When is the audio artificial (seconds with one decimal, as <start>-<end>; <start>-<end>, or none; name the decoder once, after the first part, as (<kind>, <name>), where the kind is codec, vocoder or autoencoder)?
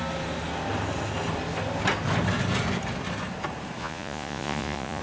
3.8-5.0 (vocoder, Vocos)